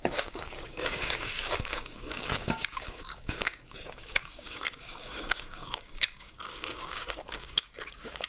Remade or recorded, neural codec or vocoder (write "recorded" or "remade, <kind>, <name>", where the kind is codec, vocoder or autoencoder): remade, codec, DAC